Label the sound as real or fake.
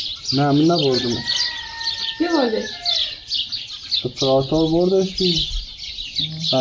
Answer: real